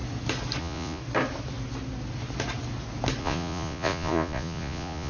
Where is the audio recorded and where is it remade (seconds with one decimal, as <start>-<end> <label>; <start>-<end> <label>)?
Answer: 0.0-0.6 recorded; 0.6-1.0 remade; 1.0-3.2 recorded; 3.2-5.1 remade